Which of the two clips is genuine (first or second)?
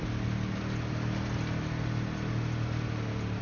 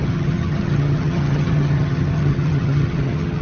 first